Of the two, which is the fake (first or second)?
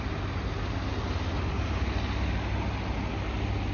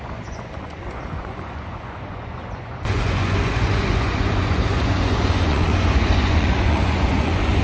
second